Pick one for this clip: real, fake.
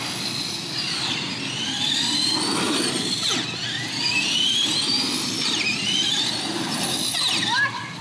real